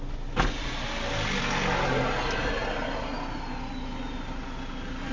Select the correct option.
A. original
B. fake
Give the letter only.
A